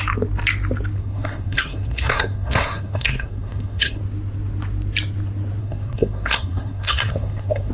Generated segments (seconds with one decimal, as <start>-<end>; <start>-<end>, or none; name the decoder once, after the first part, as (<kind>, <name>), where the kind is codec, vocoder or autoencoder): 1.0-4.0 (codec, SNAC); 5.6-7.7